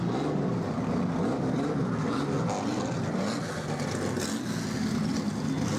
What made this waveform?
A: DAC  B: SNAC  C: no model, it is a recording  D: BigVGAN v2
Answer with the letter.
C